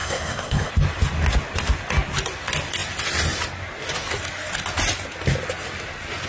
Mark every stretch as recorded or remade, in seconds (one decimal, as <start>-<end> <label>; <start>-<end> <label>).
0.0-0.7 remade; 0.7-6.3 recorded